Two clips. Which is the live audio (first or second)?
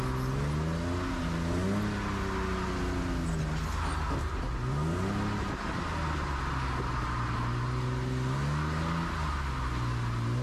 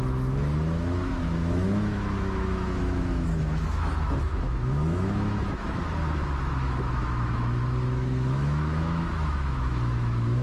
first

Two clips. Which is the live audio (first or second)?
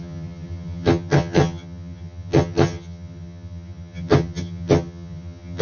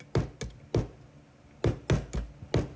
second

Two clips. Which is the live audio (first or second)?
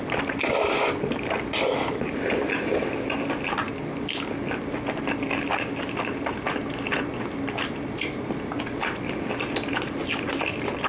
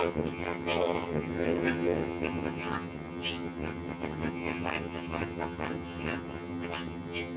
first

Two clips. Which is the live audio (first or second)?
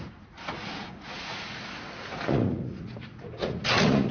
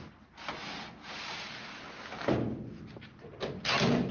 second